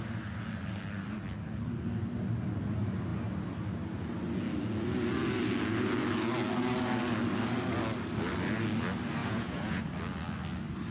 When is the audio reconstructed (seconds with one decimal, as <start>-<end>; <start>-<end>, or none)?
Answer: 9.2-9.8